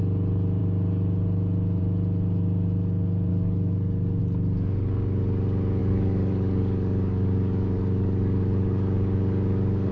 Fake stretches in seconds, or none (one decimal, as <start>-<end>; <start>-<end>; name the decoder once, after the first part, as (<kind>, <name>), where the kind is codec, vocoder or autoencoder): 3.3-4.2 (codec, DAC); 5.8-9.9